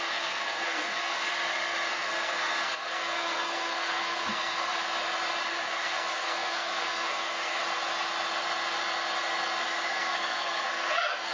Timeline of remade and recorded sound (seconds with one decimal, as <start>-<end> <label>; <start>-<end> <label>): 0.0-1.3 remade; 1.3-1.9 recorded; 1.9-4.7 remade; 4.7-5.6 recorded; 5.6-7.6 remade; 7.6-9.9 recorded; 9.9-11.3 remade